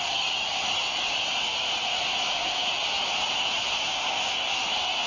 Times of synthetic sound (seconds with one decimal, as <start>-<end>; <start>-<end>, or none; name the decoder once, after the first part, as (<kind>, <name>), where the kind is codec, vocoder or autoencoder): none